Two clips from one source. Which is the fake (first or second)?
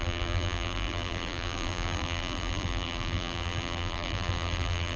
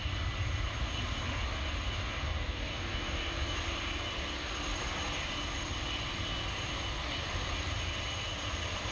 first